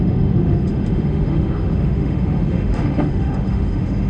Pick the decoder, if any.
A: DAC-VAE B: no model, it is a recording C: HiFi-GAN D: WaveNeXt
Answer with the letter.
A